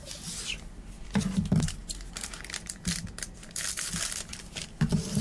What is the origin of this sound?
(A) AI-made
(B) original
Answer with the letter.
B